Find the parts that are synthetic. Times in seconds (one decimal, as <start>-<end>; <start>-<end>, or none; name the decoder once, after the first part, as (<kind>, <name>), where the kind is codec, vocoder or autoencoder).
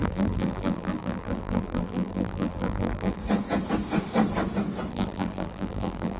0.0-3.2 (vocoder, BigVGAN v2); 4.9-6.2